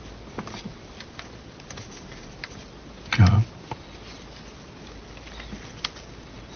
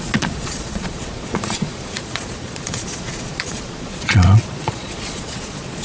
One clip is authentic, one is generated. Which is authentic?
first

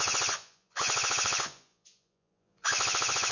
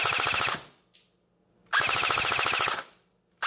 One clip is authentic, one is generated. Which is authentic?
second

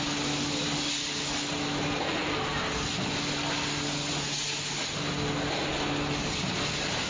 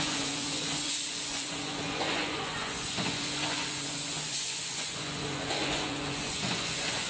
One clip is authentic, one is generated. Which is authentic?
first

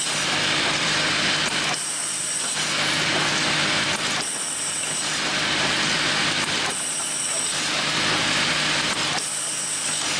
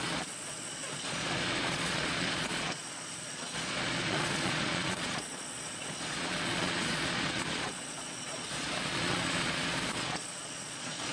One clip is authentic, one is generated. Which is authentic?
first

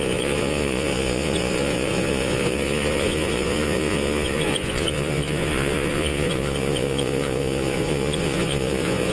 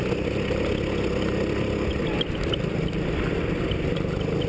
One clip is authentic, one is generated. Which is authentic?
second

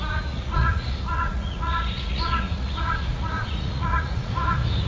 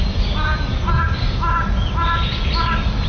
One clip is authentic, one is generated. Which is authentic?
second